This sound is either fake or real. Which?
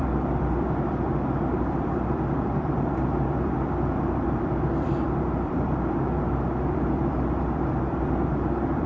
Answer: fake